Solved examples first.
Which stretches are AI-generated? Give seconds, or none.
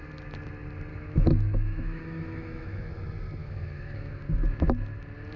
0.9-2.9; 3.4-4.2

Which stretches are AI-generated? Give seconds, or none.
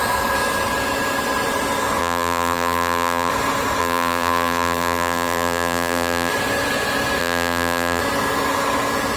2.0-3.3; 3.8-6.3; 7.2-8.0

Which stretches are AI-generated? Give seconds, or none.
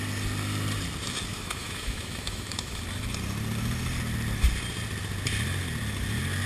1.3-2.8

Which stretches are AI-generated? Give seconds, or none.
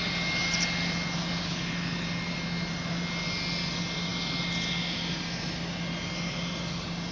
none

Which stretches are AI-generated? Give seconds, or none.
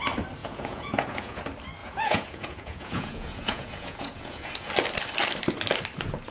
0.4-1.4; 1.8-4.7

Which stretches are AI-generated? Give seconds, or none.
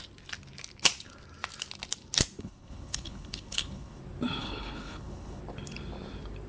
2.4-4.0; 4.4-5.4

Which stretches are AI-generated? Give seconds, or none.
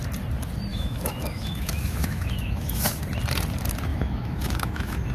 0.7-3.0; 3.9-5.1